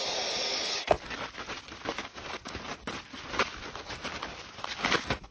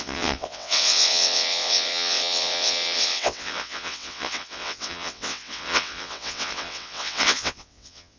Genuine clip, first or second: first